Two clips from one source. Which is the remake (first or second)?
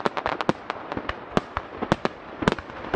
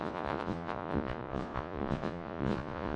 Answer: second